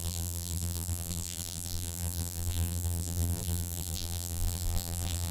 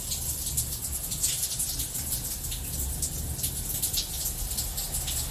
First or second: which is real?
second